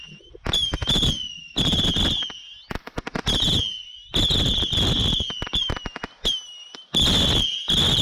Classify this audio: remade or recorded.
recorded